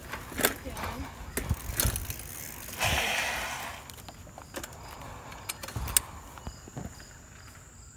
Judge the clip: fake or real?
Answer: real